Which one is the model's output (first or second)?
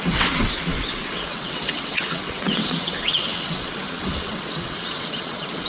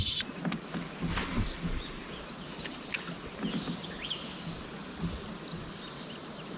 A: first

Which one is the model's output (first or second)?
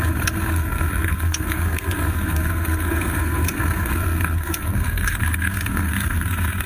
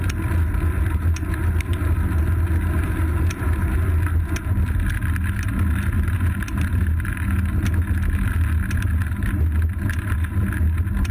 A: first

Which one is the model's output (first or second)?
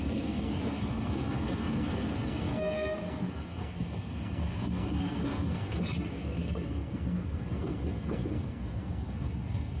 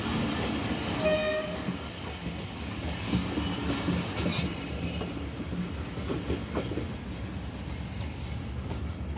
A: first